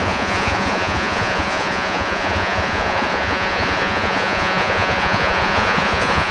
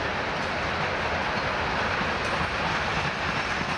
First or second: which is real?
second